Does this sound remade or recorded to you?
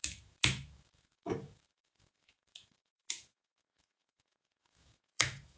remade